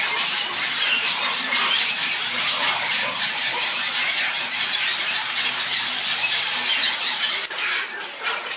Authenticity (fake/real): fake